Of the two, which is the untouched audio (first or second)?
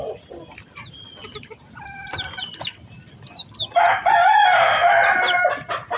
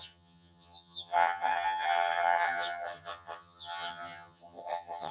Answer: first